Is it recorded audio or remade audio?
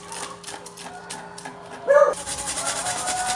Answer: recorded